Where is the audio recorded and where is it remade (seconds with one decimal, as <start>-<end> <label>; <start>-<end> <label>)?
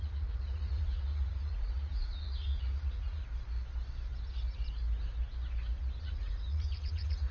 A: 0.0-3.2 remade; 3.2-6.0 recorded; 6.0-7.3 remade